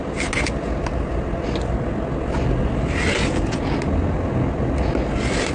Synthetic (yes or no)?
no